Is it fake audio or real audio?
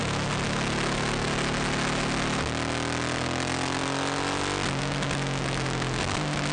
real